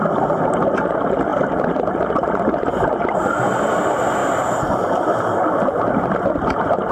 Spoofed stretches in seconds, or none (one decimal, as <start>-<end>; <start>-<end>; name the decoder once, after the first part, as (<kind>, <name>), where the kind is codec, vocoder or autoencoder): none